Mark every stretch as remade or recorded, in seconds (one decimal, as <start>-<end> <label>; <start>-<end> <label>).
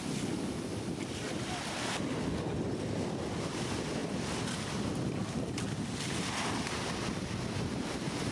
0.0-8.3 recorded